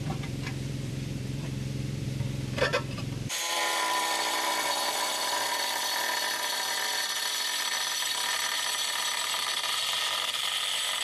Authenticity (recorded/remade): remade